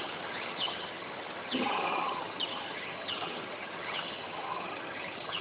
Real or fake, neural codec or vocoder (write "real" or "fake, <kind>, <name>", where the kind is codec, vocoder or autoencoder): fake, vocoder, HiFi-GAN